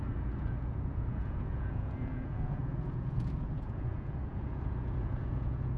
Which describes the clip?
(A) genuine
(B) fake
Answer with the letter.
B